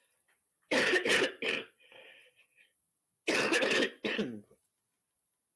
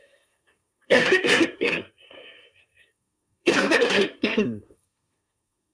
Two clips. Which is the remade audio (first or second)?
second